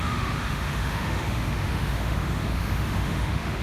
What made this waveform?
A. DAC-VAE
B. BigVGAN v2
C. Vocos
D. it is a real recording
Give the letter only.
A